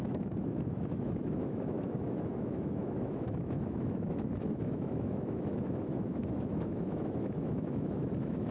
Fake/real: fake